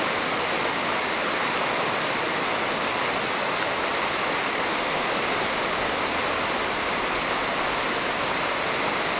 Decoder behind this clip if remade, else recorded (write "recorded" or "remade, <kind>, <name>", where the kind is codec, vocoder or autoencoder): recorded